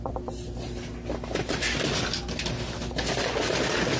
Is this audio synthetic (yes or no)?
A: no